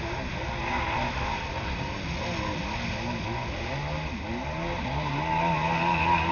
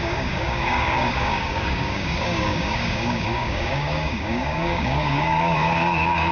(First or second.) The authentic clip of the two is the first